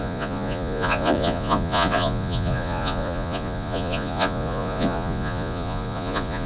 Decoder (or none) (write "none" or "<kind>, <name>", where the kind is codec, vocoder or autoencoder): vocoder, Vocos